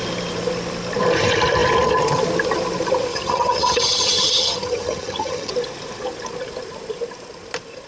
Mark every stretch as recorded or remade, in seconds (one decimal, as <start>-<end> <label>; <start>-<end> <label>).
0.0-3.1 recorded; 3.1-5.5 remade; 5.5-7.9 recorded